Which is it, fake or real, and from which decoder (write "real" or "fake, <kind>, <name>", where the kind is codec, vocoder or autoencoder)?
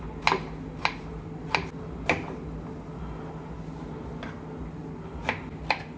real